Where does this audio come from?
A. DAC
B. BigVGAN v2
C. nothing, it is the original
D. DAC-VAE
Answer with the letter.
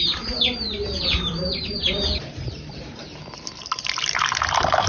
B